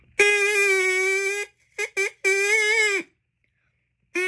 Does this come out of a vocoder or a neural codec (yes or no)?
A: no